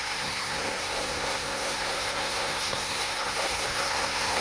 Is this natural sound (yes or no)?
no